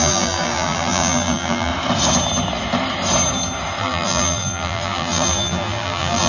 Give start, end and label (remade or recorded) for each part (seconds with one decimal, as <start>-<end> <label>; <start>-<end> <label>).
0.0-1.7 remade; 1.7-3.8 recorded; 3.8-6.3 remade